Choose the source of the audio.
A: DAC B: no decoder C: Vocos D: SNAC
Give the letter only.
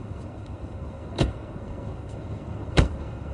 D